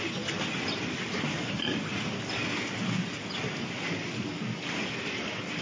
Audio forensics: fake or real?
real